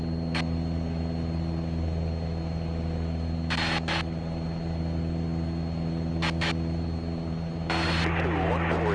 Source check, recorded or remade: recorded